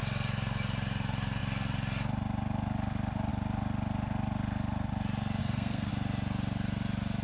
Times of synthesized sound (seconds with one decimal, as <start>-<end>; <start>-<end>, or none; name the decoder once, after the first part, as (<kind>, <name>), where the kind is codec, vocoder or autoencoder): 5.4-5.9 (codec, SNAC)